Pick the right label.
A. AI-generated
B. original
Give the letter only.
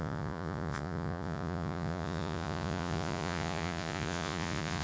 A